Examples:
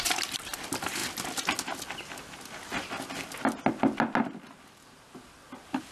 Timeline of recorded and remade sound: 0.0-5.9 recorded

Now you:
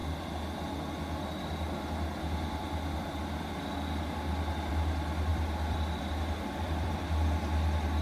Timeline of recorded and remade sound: 0.0-5.3 recorded; 5.3-6.9 remade; 6.9-8.0 recorded

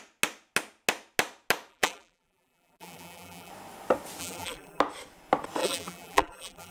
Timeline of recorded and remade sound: 0.0-1.7 recorded; 1.7-3.5 remade; 3.5-4.2 recorded; 4.2-4.8 remade; 4.8-5.6 recorded; 5.6-6.7 remade

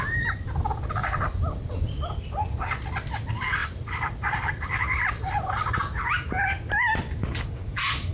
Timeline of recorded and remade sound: 0.0-1.0 recorded; 1.0-1.7 remade; 1.7-3.6 recorded; 3.6-6.1 remade; 6.1-8.1 recorded

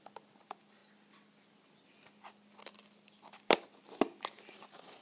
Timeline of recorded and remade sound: 0.0-5.0 recorded

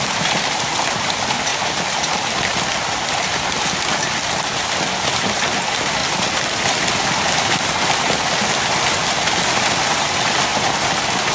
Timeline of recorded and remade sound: 0.0-1.5 recorded; 1.5-2.4 remade; 2.4-11.3 recorded